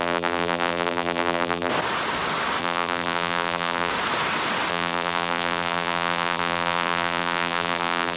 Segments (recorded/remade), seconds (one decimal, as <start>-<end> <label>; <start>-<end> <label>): 0.0-1.7 remade; 1.7-2.6 recorded; 2.6-3.9 remade; 3.9-4.7 recorded; 4.7-8.2 remade